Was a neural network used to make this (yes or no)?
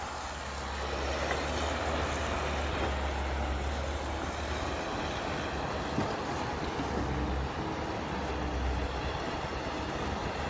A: no